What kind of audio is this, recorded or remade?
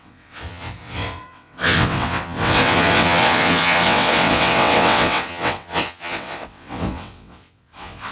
remade